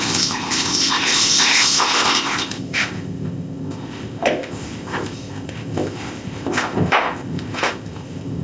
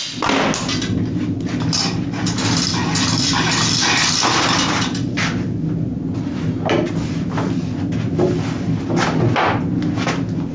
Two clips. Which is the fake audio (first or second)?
first